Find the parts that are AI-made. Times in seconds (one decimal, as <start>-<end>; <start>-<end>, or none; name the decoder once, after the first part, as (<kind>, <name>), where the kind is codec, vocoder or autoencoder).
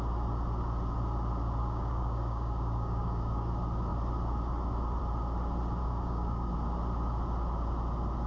1.6-3.5 (codec, DAC); 5.8-6.5